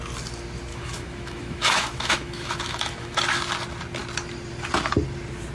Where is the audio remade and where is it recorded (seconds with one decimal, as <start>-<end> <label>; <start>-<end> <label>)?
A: 0.0-0.7 recorded; 0.7-3.2 remade; 3.2-5.5 recorded